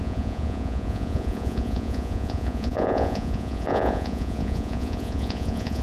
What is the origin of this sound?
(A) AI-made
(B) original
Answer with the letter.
A